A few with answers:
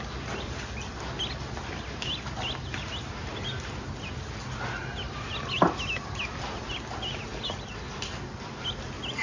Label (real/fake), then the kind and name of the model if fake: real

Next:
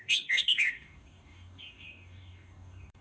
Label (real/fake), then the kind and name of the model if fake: fake, codec, DAC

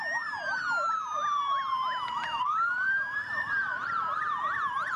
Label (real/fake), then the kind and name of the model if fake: real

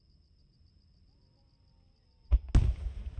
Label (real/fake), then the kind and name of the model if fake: real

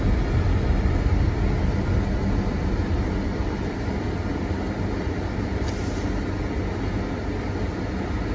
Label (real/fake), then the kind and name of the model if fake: real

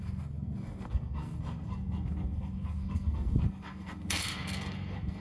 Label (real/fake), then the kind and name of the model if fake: fake, codec, SNAC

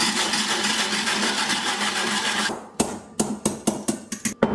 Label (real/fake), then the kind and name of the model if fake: real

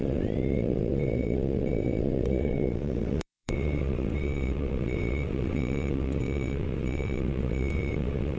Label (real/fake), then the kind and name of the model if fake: fake, vocoder, WaveNeXt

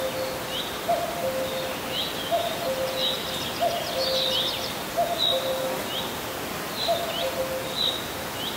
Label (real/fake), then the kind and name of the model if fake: real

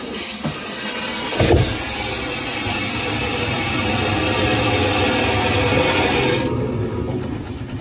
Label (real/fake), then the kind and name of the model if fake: real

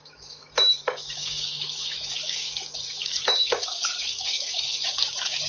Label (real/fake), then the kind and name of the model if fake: fake, autoencoder, DAC-VAE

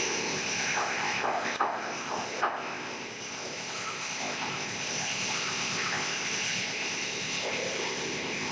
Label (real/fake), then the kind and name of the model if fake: fake, codec, ZipCodec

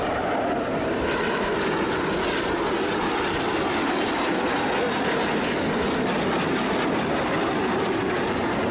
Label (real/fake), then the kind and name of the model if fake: real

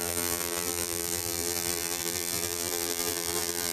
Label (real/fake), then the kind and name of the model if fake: fake, vocoder, BigVGAN v2